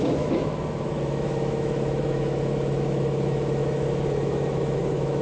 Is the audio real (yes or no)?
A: no